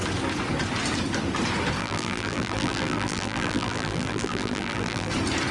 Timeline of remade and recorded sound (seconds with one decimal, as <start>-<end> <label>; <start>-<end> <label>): 0.0-1.8 recorded; 1.8-5.1 remade; 5.1-5.5 recorded